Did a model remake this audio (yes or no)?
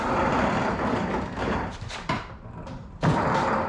yes